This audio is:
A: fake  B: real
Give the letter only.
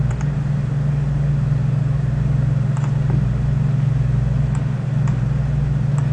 B